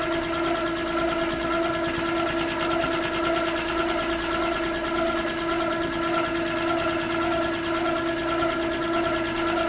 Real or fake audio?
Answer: real